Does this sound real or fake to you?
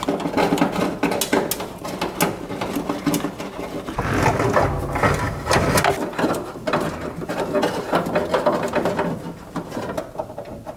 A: real